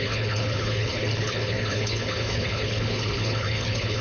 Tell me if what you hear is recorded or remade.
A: remade